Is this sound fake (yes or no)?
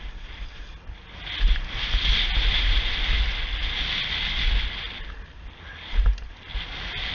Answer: no